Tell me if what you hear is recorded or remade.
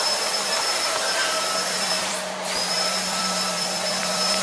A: remade